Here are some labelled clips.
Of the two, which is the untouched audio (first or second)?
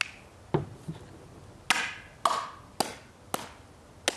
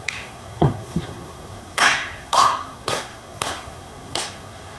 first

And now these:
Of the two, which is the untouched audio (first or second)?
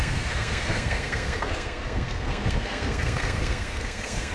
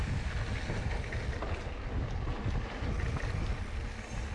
second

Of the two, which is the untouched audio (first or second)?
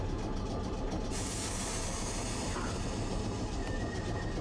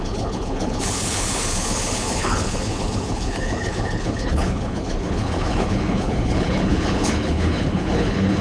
first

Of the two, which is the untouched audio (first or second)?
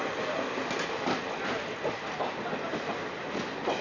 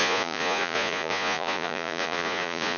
first